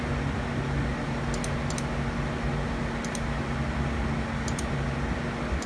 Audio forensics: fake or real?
real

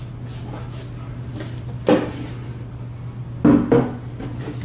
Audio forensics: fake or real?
real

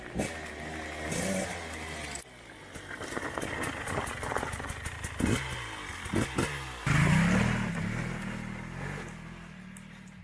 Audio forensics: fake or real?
real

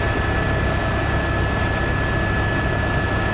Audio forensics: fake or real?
real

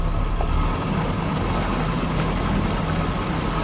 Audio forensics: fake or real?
real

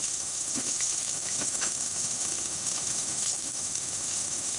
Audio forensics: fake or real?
fake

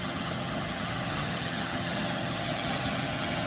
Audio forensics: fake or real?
fake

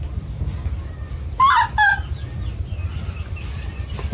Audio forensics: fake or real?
real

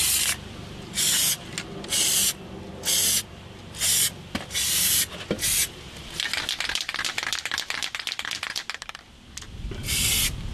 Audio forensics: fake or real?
real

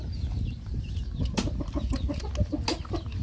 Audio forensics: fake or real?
real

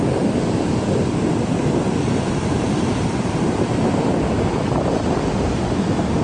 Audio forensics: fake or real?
real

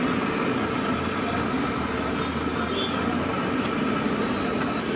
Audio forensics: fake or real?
real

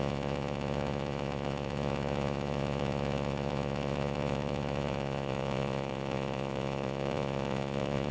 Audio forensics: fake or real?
fake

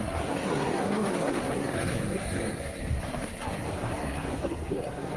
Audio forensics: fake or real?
fake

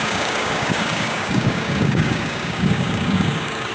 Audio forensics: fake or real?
fake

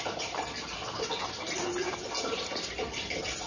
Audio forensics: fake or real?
real